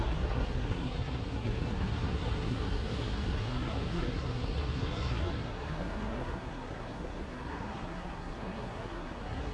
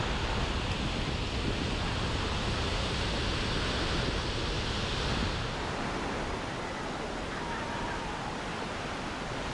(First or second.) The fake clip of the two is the first